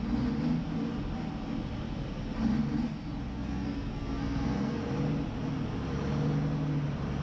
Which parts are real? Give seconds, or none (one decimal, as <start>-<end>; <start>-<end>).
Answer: 0.0-3.3; 4.8-7.2